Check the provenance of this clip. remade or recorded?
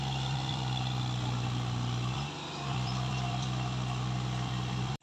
remade